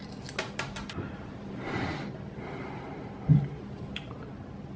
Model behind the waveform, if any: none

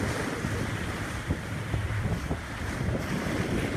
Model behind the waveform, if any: none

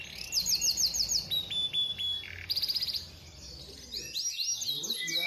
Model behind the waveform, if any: none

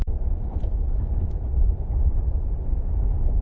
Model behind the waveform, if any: none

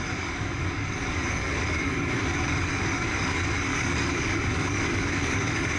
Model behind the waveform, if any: codec, DAC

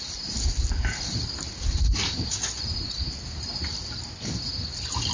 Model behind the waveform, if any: none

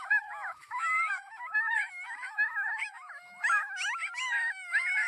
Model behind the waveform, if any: autoencoder, DAC-VAE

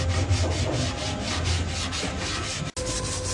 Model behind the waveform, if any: none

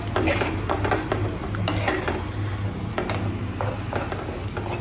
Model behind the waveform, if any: none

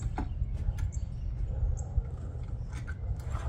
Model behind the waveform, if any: none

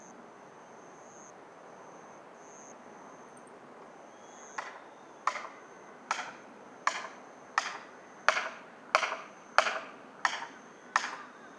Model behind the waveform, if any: none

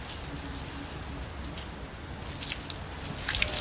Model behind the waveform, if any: none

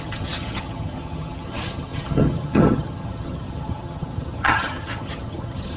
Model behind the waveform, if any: vocoder, HiFi-GAN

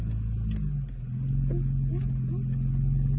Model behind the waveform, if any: none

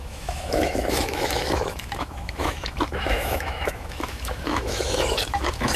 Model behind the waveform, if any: autoencoder, DAC-VAE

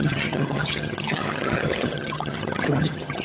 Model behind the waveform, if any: vocoder, HiFi-GAN